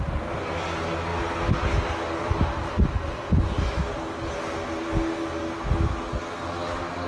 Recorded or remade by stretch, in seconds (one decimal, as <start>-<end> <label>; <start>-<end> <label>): 0.0-7.1 recorded